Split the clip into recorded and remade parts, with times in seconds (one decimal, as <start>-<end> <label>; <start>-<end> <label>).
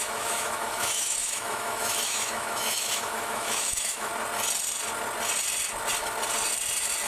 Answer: 0.0-4.1 remade; 4.1-7.1 recorded